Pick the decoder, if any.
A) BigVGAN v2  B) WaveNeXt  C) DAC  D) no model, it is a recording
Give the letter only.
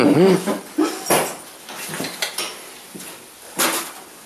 D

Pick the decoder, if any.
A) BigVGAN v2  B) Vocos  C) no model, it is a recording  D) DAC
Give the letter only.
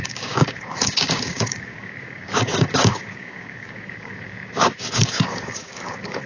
D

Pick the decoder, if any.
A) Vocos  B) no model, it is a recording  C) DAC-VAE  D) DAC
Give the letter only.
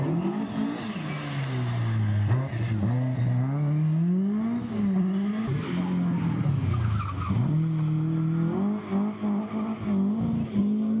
B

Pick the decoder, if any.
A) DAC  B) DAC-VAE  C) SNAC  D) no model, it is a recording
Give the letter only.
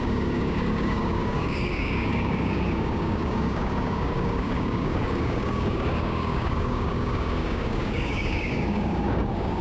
A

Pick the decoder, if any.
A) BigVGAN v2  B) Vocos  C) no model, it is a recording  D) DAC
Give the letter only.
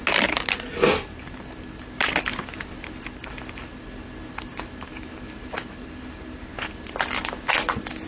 C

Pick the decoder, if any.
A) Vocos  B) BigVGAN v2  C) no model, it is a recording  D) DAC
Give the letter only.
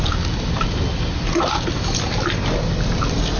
C